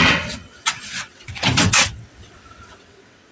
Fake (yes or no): yes